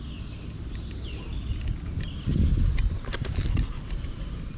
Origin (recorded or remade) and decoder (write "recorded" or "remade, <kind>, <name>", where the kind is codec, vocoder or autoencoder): remade, vocoder, BigVGAN v2